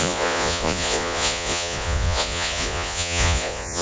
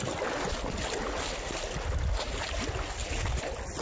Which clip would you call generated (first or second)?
first